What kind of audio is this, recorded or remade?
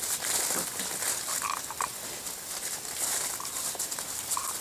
recorded